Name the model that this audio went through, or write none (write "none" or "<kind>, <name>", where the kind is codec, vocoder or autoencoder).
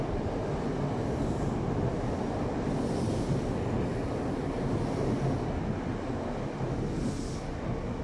none